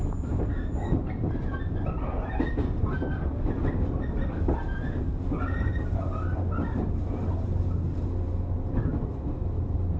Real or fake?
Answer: real